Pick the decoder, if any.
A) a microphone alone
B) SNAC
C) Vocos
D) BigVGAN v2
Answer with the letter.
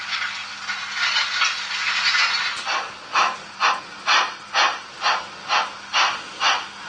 A